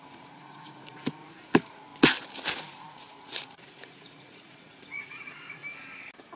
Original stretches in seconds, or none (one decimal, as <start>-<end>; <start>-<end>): 1.9-2.6; 5.6-6.4